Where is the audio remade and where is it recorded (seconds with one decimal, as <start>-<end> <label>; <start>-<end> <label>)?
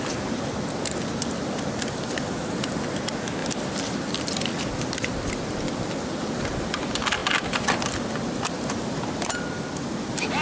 0.0-10.4 recorded